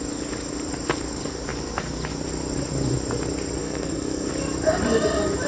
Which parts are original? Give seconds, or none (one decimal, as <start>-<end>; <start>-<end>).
0.0-3.6; 4.3-5.5